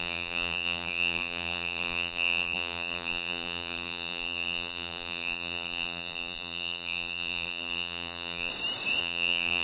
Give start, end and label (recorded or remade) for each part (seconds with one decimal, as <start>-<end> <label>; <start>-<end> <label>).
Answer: 0.0-8.5 remade; 8.5-9.0 recorded; 9.0-9.6 remade